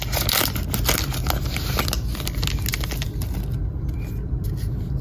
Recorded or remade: recorded